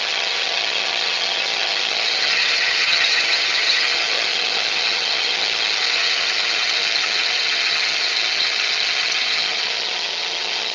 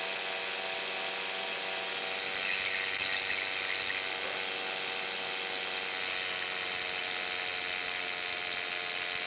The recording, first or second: second